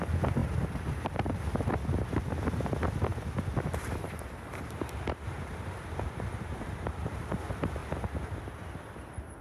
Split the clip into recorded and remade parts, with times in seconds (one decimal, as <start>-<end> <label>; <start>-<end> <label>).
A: 0.0-3.1 recorded; 3.1-7.1 remade; 7.1-9.4 recorded